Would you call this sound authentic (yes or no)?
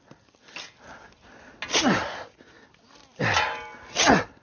yes